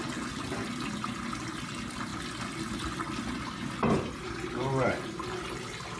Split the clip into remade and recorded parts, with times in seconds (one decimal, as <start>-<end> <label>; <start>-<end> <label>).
0.0-6.0 recorded